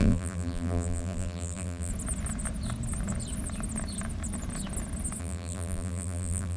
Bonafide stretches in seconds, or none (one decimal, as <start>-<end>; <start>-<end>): 1.9-5.2